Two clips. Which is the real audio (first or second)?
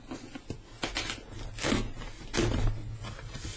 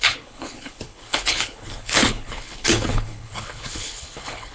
first